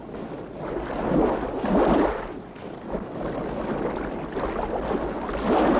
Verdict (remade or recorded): recorded